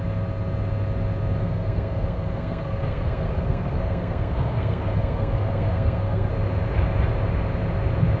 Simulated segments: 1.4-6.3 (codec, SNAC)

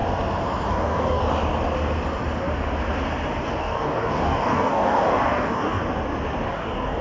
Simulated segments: 0.7-1.2 (codec, DAC); 3.6-5.8; 6.5-7.0

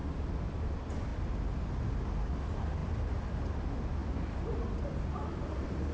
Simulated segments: none

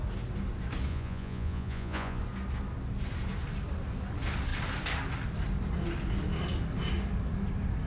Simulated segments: 0.9-2.2 (vocoder, Vocos)

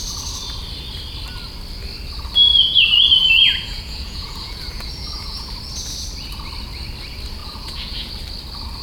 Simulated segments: 3.2-5.5 (vocoder, Vocos); 7.4-8.1